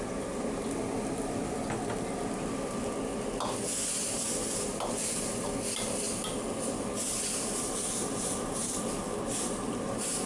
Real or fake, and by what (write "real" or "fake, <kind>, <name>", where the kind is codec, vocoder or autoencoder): real